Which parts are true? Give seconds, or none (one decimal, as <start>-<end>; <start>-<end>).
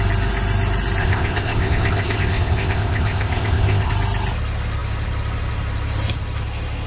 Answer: 0.0-1.0; 3.9-6.9